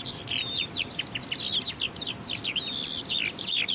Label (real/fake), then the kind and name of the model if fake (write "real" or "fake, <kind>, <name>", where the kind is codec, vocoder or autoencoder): fake, vocoder, BigVGAN v2